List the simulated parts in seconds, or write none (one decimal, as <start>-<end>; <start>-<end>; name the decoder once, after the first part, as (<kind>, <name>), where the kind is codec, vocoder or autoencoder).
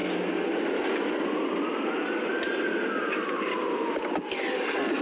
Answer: none